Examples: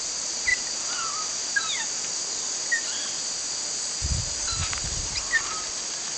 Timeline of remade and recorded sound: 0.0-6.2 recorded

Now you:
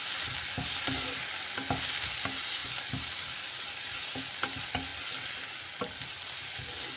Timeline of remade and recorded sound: 0.0-7.0 recorded

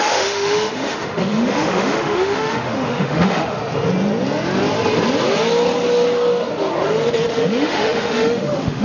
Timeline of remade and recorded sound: 0.0-3.6 remade; 3.6-7.3 recorded; 7.3-8.8 remade

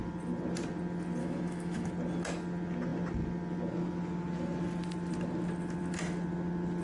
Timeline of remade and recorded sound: 0.0-1.2 recorded; 1.2-1.9 remade; 1.9-6.8 recorded

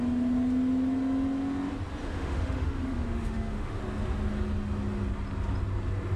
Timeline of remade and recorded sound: 0.0-2.0 recorded; 2.0-3.8 remade; 3.8-6.2 recorded

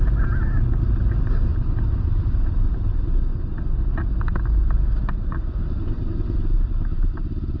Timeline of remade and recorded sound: 0.0-7.6 recorded

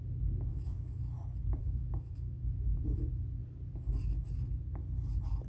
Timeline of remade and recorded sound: 0.0-0.5 recorded; 0.5-1.0 remade; 1.0-1.6 recorded; 1.6-2.8 remade; 2.8-5.5 recorded